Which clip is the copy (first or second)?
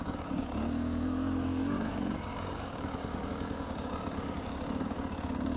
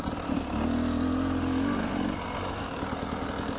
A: first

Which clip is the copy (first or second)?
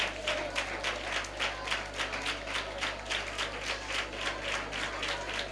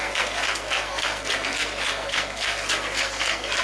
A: second